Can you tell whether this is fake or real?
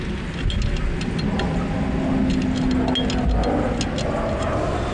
real